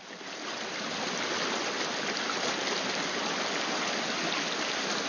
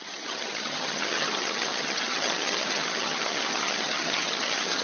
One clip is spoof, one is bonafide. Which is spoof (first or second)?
second